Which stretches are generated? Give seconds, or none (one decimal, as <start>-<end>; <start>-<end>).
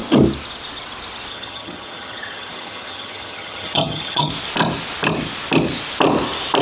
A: 1.3-4.3